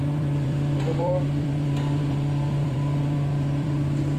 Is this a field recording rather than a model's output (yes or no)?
no